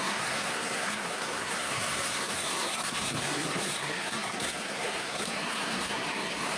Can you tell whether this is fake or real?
fake